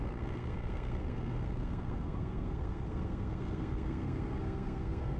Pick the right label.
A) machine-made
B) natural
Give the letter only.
A